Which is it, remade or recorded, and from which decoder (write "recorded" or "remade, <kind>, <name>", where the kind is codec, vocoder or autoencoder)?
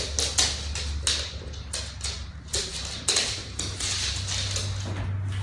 recorded